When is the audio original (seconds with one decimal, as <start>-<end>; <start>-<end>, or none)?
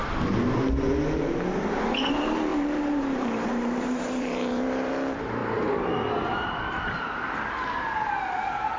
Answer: 0.0-2.5; 4.9-8.8